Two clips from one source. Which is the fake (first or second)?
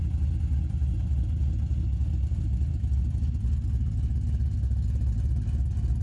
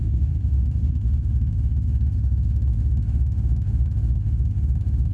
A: second